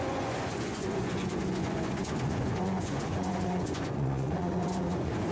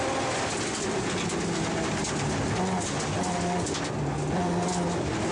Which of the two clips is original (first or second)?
second